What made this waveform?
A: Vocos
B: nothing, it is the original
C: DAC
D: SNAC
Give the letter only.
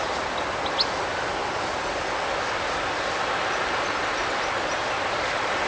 B